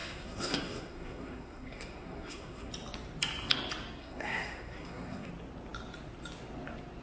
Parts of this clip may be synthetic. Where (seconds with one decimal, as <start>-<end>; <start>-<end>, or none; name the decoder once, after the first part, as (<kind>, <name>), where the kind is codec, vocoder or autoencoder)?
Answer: 0.0-2.7 (codec, SNAC); 4.0-5.3

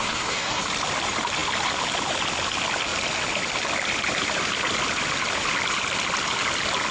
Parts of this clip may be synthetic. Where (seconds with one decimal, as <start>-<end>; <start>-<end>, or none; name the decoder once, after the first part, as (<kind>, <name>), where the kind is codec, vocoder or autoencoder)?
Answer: 0.0-0.6 (codec, SNAC)

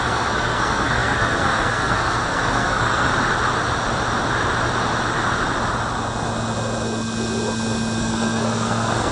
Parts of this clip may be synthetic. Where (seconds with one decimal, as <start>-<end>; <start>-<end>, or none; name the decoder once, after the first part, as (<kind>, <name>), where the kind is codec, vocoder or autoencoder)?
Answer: 0.0-3.1 (codec, SNAC); 8.0-9.1